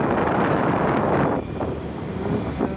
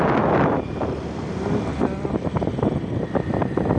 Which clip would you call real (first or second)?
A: second